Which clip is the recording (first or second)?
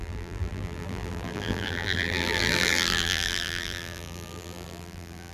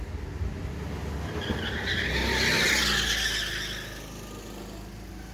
second